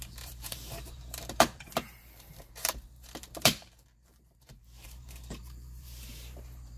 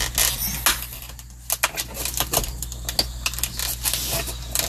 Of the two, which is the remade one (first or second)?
first